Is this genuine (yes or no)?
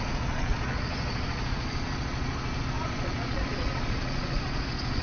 no